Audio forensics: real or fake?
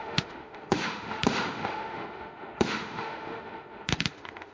fake